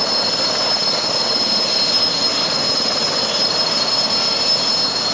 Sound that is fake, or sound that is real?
real